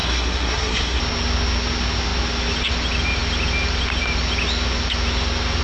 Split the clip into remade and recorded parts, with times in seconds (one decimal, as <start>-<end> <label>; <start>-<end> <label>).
0.0-1.0 remade; 1.0-5.6 recorded